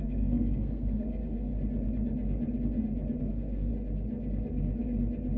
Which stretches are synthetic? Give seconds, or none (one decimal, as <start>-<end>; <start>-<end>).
0.0-1.5; 3.2-3.7